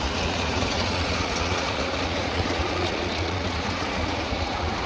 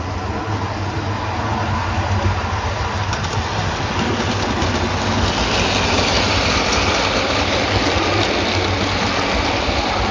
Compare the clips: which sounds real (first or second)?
second